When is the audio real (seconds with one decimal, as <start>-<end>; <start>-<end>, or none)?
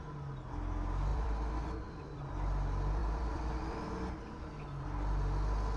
0.0-1.1; 2.2-3.0; 3.8-5.8